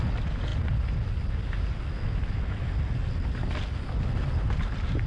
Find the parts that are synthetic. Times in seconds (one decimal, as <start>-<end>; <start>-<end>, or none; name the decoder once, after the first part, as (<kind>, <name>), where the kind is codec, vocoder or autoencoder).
none